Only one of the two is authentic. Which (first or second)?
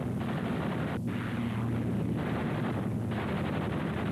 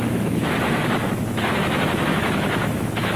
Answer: first